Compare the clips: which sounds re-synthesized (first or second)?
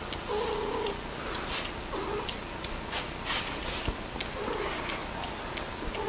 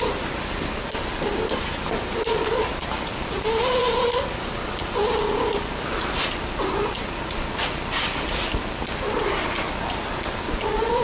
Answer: second